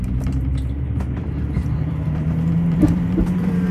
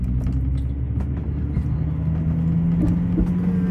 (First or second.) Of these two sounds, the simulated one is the first